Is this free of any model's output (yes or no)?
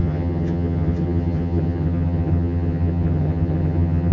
no